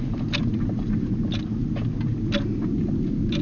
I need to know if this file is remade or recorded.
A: recorded